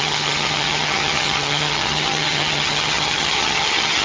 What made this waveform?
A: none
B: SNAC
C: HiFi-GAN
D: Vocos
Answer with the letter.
C